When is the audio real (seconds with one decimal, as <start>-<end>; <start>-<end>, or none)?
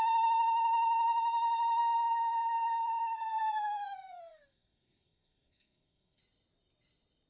0.0-1.8; 6.2-7.3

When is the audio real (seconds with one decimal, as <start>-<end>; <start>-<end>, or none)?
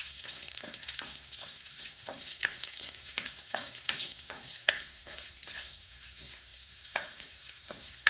none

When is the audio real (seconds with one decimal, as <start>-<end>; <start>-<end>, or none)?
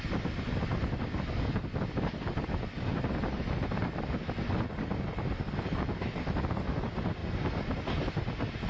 0.0-8.7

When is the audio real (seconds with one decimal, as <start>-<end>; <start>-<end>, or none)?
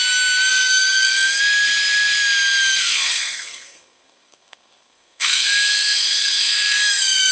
0.0-0.5; 1.4-2.8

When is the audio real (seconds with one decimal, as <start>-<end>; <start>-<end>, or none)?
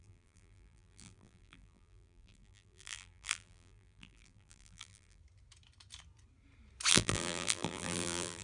5.2-6.9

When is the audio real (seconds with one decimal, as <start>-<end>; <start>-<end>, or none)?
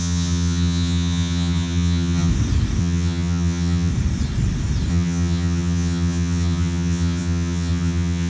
2.3-2.8; 3.9-4.9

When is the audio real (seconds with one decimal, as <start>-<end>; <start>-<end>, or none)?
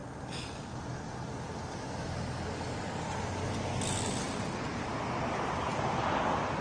0.0-6.6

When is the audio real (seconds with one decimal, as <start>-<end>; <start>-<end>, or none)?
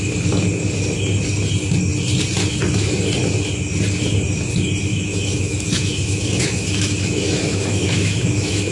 0.0-4.9